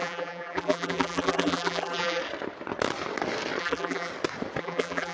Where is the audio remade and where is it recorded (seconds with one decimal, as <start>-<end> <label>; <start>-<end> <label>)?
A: 0.0-2.2 remade; 2.2-3.6 recorded; 3.6-4.1 remade; 4.1-4.6 recorded; 4.6-5.1 remade